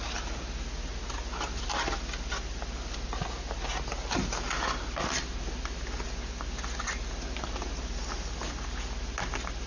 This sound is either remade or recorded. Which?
recorded